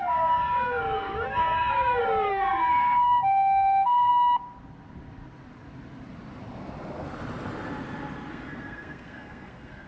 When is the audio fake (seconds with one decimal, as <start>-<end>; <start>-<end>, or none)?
0.0-4.1; 8.3-9.9